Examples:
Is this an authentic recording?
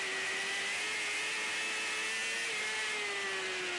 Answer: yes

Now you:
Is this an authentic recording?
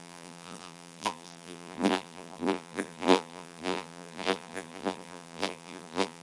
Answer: no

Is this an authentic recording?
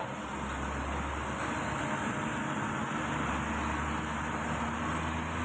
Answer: yes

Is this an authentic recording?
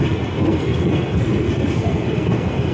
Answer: no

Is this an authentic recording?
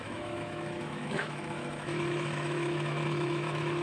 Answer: no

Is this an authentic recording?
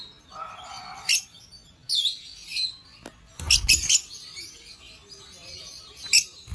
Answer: yes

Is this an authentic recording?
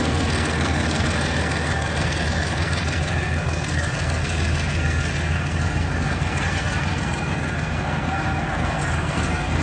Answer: no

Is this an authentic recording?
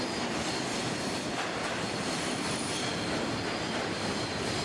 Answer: no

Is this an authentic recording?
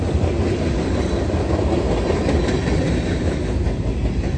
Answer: yes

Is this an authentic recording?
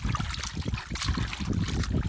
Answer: yes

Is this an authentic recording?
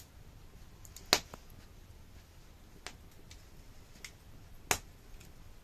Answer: yes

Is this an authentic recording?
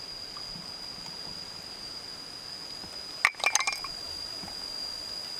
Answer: yes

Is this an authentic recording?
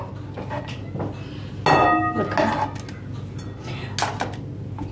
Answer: yes